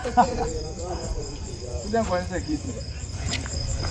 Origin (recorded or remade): remade